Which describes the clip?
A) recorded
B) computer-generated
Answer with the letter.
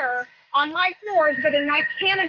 B